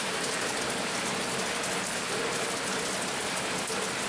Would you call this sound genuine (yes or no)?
yes